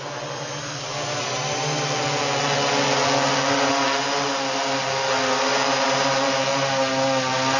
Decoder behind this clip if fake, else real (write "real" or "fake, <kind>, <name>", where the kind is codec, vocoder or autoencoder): real